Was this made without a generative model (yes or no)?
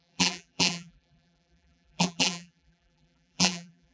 no